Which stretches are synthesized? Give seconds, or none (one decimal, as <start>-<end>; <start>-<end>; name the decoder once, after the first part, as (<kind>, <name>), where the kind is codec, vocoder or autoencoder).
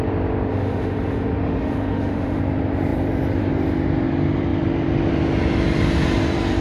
0.5-2.4 (autoencoder, DAC-VAE)